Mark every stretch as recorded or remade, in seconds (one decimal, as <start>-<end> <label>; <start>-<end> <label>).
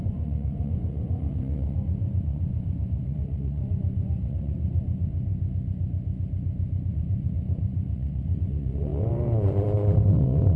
0.0-5.3 remade; 5.3-6.9 recorded; 6.9-10.6 remade